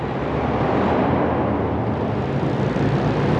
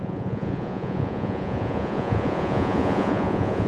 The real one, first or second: first